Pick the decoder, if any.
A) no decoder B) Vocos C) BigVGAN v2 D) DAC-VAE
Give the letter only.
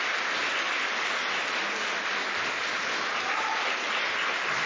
A